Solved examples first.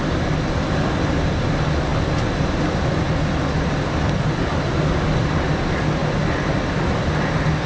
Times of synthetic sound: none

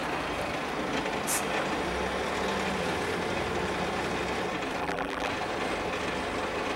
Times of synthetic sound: 4.8-5.3

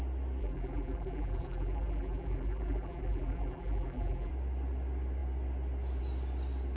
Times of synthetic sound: 0.4-4.3

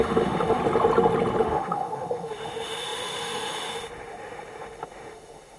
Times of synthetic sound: 0.0-0.6; 1.4-5.6